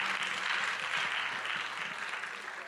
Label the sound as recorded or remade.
recorded